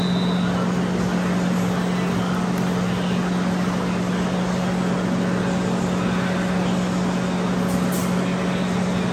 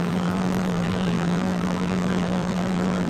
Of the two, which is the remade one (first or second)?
second